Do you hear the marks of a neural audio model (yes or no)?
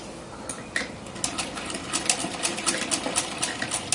no